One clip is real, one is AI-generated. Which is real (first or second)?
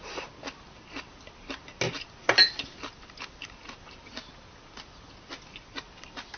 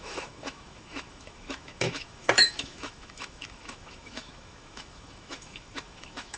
first